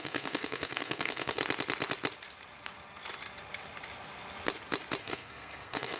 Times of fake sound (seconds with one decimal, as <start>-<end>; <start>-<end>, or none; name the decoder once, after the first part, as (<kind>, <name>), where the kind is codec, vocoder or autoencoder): 0.0-1.4 (codec, SNAC); 5.0-6.0